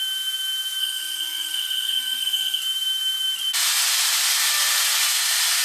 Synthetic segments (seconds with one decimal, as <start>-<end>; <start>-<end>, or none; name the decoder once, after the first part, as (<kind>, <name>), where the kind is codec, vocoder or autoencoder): 0.8-2.6 (codec, SNAC)

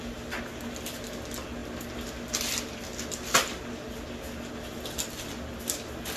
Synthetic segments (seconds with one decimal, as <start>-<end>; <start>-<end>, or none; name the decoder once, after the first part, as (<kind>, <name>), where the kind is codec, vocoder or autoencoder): none

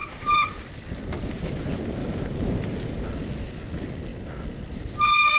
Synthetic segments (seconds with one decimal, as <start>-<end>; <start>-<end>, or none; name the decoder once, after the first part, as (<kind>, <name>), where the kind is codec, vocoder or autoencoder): 0.0-0.7 (vocoder, BigVGAN v2); 2.0-3.1

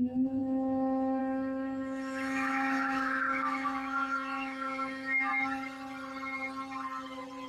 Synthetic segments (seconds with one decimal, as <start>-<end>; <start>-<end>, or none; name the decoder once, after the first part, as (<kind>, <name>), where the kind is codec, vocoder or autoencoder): 0.0-5.3 (autoencoder, DAC-VAE)